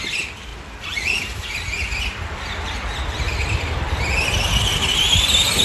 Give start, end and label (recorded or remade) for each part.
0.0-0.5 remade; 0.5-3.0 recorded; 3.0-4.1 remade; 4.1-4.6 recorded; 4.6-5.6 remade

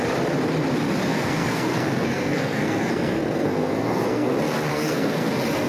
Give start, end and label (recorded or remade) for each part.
0.0-1.1 recorded; 1.1-4.3 remade; 4.3-4.7 recorded; 4.7-5.3 remade; 5.3-5.7 recorded

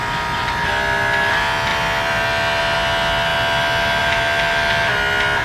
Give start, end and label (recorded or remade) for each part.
0.0-5.4 recorded

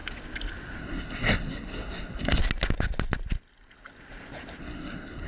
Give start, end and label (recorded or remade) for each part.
0.0-0.8 recorded; 0.8-2.4 remade; 2.4-4.6 recorded; 4.6-5.3 remade

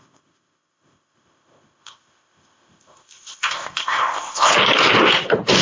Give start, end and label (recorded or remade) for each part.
0.0-4.5 remade; 4.5-5.6 recorded

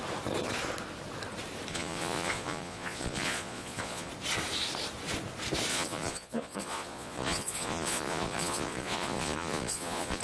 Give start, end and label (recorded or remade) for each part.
0.0-1.7 recorded; 1.7-4.1 remade; 4.1-5.7 recorded; 5.7-10.2 remade